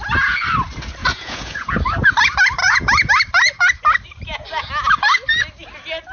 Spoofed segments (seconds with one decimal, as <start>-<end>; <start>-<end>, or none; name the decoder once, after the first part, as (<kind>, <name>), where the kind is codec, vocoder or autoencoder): 1.0-1.7 (vocoder, Vocos); 2.6-3.1

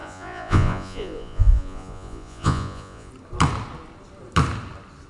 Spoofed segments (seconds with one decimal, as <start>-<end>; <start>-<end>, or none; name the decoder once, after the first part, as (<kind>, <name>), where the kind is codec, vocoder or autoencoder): 0.0-3.1 (vocoder, Vocos)

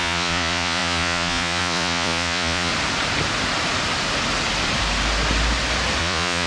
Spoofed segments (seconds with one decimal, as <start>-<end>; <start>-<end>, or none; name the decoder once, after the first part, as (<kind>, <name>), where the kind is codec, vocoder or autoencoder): 0.0-2.7 (vocoder, Vocos); 6.0-6.5

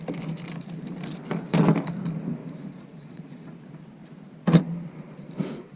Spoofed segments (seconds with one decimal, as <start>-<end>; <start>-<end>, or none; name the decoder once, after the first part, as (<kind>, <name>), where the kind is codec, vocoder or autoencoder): 2.4-3.6 (vocoder, Vocos); 4.0-4.6

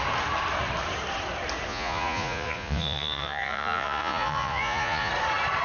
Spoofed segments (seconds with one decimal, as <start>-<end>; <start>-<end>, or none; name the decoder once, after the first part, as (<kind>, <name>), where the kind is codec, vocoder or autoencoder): 1.7-5.1 (vocoder, Vocos)